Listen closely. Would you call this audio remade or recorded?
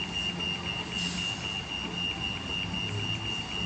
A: recorded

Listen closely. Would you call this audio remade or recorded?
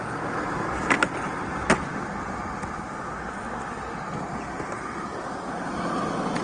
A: recorded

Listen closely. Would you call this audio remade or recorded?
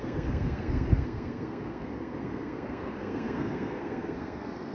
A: remade